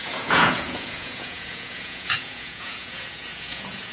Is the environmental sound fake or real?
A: fake